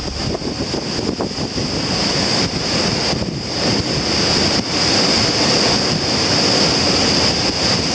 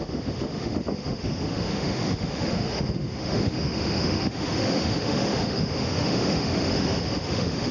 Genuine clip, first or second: first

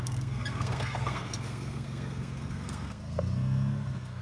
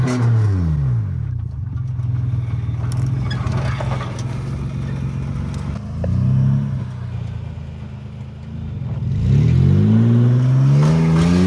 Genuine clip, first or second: second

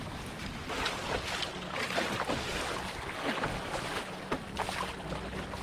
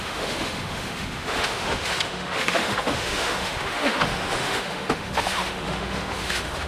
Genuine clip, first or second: first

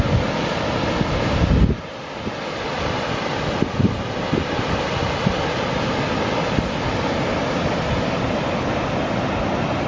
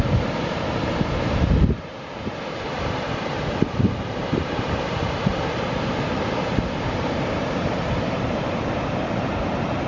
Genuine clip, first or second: first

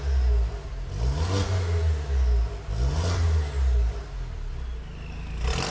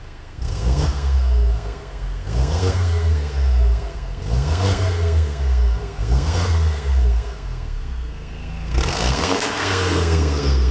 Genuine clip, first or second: first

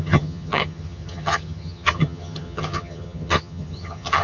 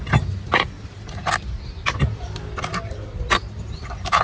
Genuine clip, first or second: second